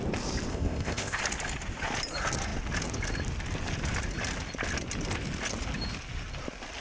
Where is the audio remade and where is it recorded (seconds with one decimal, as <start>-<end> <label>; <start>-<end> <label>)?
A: 0.0-0.5 recorded; 0.5-1.2 remade; 1.2-6.8 recorded